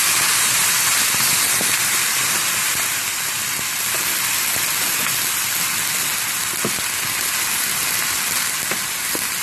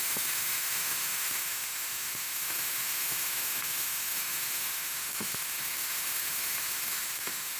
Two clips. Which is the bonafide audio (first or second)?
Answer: first